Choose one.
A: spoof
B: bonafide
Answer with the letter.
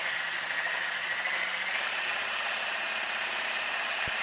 B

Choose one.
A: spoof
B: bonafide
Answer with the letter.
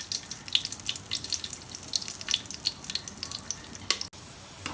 B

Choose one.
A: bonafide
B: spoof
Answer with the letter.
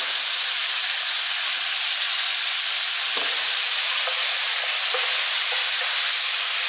A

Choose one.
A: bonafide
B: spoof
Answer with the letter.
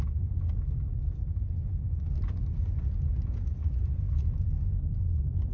A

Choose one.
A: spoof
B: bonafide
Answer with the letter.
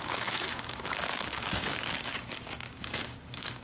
A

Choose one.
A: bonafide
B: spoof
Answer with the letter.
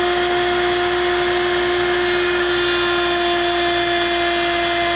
A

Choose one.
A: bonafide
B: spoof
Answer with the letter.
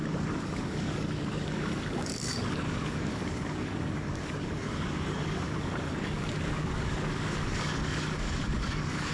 B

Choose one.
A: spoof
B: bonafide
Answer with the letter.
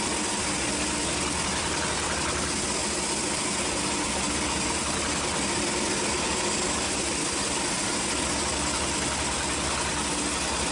B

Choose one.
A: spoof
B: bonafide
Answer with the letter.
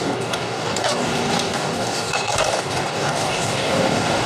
A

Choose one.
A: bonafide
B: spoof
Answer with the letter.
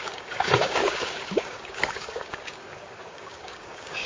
B